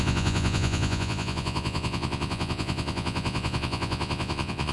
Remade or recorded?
remade